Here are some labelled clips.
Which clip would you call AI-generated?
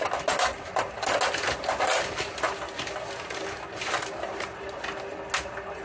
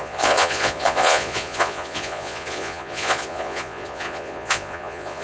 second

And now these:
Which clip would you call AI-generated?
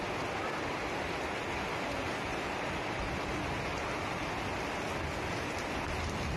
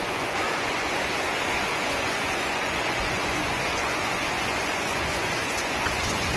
second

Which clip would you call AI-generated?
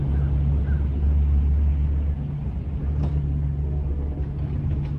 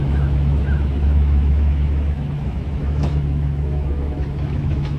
second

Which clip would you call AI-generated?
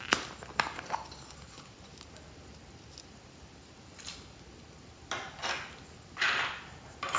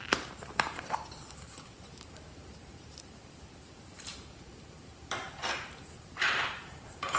second